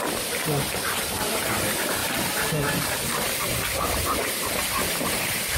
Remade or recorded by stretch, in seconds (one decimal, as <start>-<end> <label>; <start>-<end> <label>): 0.0-2.0 remade; 2.0-3.0 recorded; 3.0-5.6 remade